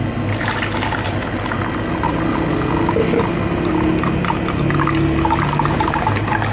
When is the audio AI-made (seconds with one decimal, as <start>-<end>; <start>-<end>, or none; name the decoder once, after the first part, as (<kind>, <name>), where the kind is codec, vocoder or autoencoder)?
none